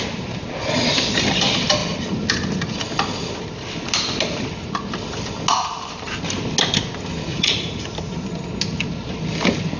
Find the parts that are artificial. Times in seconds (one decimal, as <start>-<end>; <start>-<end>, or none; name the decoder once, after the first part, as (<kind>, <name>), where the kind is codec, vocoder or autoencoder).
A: 7.3-7.8 (vocoder, Vocos)